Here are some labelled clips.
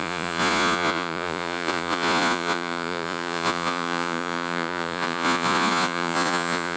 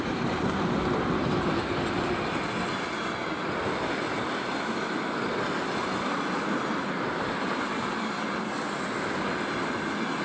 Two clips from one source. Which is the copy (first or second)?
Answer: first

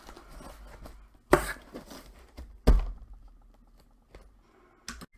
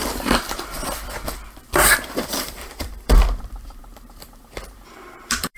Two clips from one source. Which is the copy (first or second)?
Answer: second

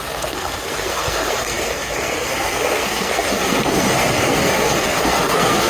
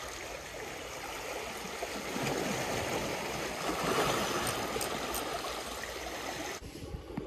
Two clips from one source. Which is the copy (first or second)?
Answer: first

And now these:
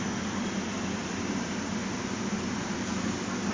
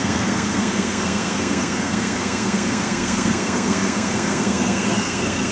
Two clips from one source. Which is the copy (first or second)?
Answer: second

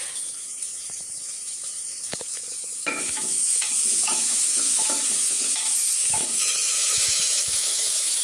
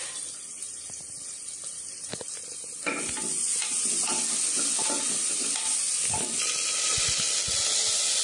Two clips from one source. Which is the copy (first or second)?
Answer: first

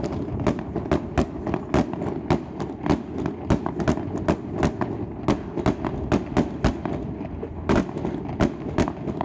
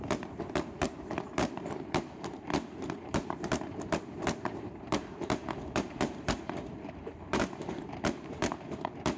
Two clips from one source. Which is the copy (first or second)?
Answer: second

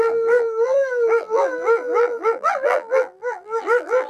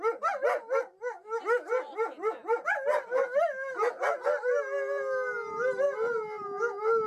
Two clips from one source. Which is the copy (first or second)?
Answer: first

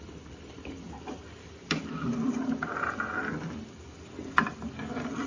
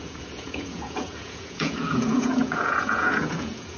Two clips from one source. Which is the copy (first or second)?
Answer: second